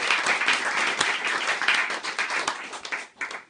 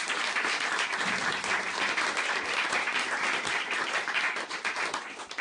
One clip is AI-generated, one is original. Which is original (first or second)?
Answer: first